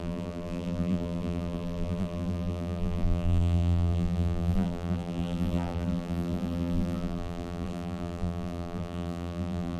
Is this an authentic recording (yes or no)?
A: no